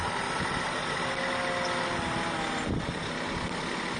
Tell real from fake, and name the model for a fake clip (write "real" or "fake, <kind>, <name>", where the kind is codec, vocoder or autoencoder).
real